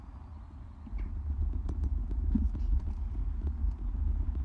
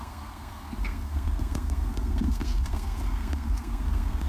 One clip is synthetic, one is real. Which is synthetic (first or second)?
second